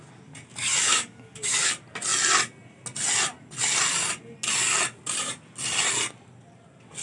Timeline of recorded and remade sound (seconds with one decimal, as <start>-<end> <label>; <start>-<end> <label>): 0.0-0.8 recorded; 0.8-1.7 remade; 1.7-7.0 recorded